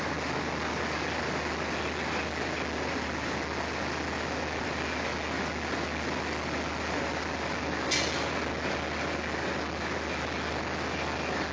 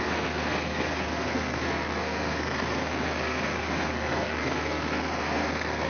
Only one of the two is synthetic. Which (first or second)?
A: second